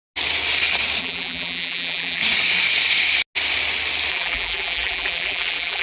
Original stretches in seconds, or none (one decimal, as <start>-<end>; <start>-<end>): 0.0-1.0; 2.2-4.1